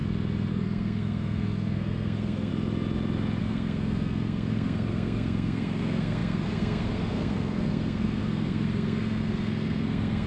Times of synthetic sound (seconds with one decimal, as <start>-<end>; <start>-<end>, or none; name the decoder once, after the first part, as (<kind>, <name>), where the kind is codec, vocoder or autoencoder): 0.5-2.5 (codec, SNAC); 3.4-10.3